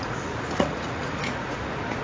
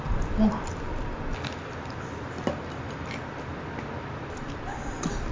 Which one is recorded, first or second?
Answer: second